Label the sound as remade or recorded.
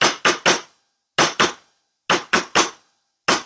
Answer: recorded